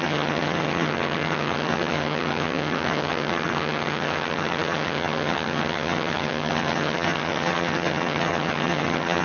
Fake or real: fake